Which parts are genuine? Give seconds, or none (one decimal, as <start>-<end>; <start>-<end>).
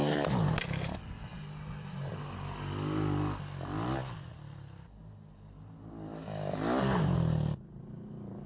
0.0-8.5